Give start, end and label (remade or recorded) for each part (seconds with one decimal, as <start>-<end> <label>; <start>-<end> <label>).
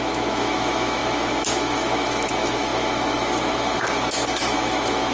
0.0-5.1 remade